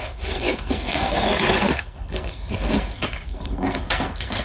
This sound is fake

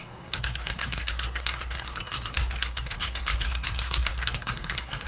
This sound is fake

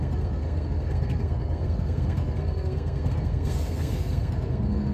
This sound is fake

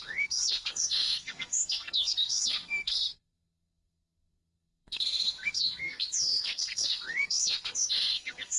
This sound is fake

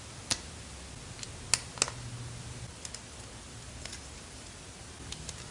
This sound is real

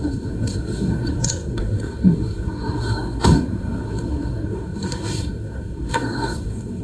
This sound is fake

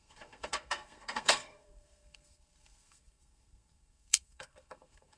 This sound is fake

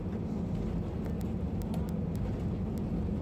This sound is real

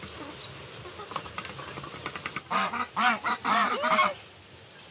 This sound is real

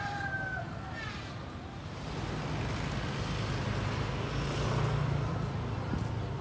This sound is real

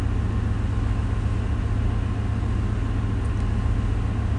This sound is real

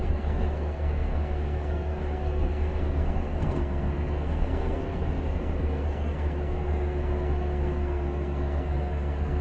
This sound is fake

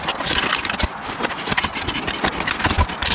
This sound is real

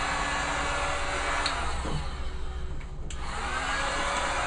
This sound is real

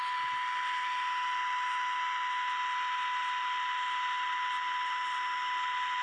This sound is real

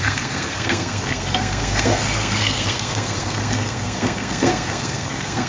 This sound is fake